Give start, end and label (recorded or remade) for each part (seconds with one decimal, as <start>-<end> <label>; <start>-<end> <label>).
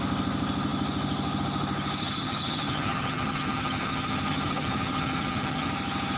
0.0-2.0 recorded; 2.0-5.7 remade; 5.7-6.2 recorded